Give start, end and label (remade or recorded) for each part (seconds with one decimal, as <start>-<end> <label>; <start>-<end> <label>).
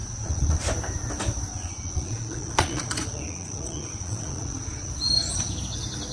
0.0-0.6 remade; 0.6-1.5 recorded; 1.5-4.9 remade; 4.9-6.1 recorded